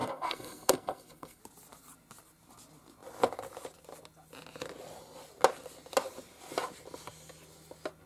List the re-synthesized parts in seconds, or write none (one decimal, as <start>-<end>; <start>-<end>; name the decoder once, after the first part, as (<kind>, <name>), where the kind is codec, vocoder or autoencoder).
0.0-1.4 (codec, SNAC)